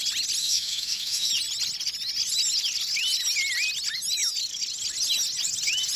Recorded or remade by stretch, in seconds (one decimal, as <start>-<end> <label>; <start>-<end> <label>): 0.0-0.4 recorded; 0.4-1.3 remade; 1.3-6.0 recorded